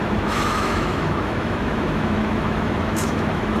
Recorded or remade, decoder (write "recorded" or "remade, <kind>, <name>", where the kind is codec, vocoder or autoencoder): remade, autoencoder, DAC-VAE